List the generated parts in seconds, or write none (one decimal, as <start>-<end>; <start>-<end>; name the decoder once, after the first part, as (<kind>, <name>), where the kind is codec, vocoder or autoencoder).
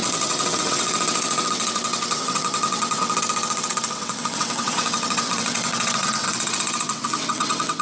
0.0-7.8 (vocoder, WaveNeXt)